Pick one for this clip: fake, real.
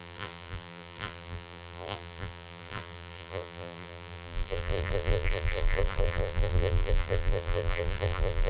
fake